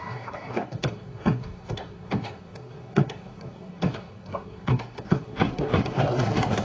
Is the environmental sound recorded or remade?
remade